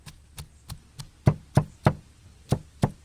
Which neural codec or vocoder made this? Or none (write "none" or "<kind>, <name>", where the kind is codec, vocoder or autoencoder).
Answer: none